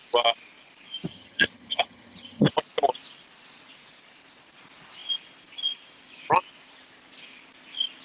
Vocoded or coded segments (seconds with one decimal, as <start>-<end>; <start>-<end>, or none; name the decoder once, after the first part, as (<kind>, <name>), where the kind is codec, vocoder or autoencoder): 1.1-2.5 (vocoder, HiFi-GAN)